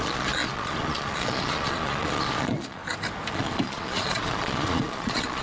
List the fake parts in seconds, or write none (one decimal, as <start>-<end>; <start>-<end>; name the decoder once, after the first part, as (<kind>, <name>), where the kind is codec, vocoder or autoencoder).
0.0-2.8 (vocoder, Vocos); 3.3-5.4